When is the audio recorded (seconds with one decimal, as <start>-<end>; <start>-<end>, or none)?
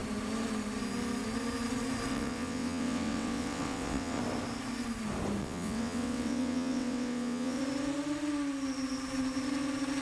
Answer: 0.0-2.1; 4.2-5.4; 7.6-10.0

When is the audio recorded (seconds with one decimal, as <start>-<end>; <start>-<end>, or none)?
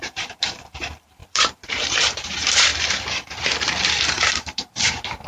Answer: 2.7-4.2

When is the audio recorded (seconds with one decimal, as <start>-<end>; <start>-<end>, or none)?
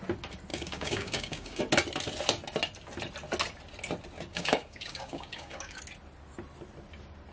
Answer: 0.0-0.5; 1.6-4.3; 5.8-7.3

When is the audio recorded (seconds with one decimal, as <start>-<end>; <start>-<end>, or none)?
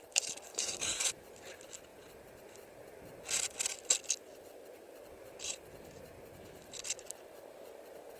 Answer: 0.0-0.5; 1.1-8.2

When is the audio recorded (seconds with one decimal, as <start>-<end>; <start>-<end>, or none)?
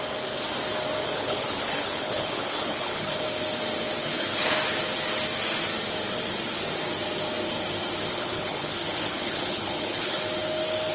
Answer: 0.0-1.0; 3.2-4.0; 4.6-8.1; 10.2-10.9